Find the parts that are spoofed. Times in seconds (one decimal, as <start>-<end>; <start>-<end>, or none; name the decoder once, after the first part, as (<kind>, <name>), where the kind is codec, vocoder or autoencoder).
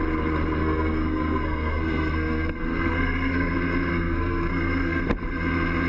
0.6-3.5 (codec, SNAC); 3.9-5.0